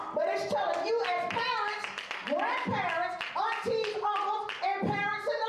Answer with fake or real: real